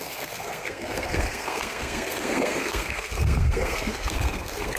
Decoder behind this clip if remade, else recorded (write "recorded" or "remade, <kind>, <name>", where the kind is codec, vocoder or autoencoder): remade, codec, SNAC